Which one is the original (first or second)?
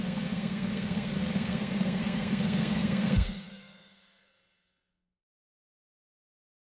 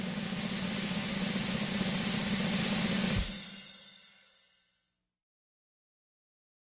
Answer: second